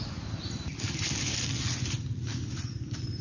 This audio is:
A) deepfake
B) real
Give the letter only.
B